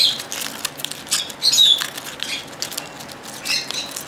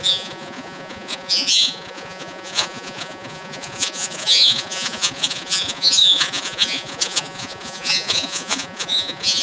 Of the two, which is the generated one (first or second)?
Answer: second